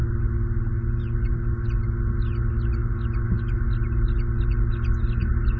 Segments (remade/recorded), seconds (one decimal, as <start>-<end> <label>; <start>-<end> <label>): 0.0-5.6 recorded